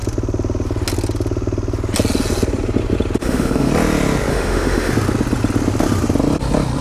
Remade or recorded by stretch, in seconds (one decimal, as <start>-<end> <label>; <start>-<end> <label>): 0.0-3.2 recorded; 3.2-3.7 remade; 3.7-4.3 recorded; 4.3-4.9 remade; 4.9-6.8 recorded